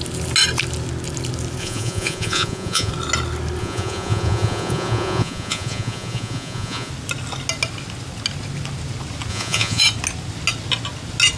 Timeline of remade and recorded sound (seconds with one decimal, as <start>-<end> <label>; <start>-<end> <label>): 0.0-1.6 recorded; 1.6-2.9 remade; 2.9-3.6 recorded; 3.6-6.9 remade; 6.9-9.3 recorded; 9.3-9.8 remade; 9.8-11.4 recorded